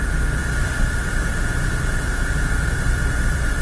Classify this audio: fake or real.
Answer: fake